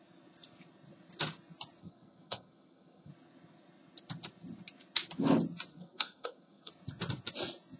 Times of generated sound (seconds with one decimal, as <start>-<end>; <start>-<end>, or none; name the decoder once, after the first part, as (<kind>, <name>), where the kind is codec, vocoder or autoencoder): 1.8-3.1 (codec, SNAC); 5.7-6.7